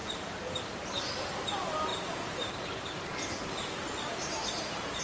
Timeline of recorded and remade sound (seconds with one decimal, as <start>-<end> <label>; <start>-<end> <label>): 0.0-1.0 remade; 1.0-1.9 recorded; 1.9-5.0 remade